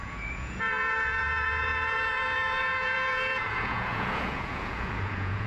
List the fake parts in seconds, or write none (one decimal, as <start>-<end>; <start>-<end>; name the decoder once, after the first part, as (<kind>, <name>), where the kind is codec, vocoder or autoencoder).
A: 0.0-5.5 (vocoder, Vocos)